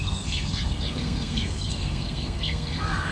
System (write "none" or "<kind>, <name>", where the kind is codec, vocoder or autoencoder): codec, SNAC